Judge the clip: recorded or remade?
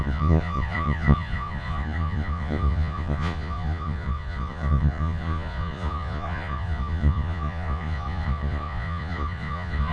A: remade